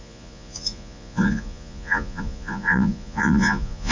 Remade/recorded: remade